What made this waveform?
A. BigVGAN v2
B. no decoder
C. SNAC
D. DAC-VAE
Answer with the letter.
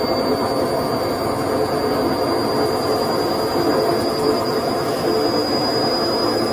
B